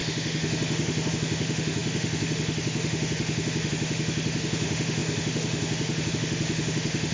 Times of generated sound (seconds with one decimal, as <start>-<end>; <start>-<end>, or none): 0.0-7.1